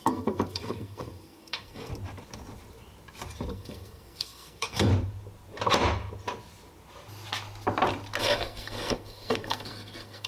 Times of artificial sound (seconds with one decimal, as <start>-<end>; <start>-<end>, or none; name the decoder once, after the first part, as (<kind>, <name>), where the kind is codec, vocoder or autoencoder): 0.0-1.9 (codec, SNAC); 3.5-4.9; 8.2-10.3

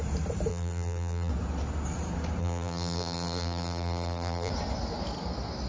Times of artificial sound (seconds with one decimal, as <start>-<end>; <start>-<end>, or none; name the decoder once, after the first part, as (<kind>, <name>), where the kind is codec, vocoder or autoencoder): 0.5-1.3 (vocoder, BigVGAN v2); 2.4-4.5

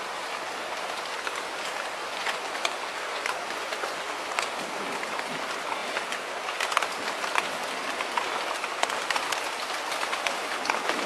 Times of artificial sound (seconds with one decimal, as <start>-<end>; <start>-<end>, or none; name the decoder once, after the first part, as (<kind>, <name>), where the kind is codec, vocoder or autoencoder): 2.0-4.2 (vocoder, Vocos)

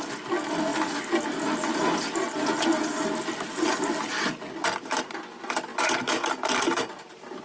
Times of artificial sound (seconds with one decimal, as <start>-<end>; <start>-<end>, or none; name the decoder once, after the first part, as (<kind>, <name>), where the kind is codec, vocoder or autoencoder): 5.7-7.4 (vocoder, BigVGAN v2)

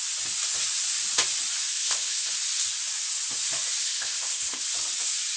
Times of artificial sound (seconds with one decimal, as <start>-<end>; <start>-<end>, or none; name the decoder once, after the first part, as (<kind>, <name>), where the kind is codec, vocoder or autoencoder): 1.7-2.3 (codec, ZipCodec); 3.8-4.6

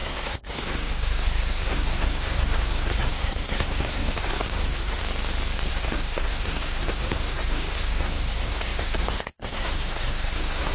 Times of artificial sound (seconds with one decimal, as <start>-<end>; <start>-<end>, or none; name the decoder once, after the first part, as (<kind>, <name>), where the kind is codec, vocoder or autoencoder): 0.0-5.0 (codec, SNAC); 5.7-10.7